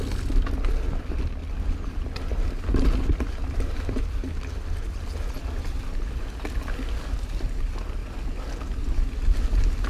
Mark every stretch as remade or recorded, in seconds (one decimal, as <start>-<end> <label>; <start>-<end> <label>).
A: 0.0-9.9 recorded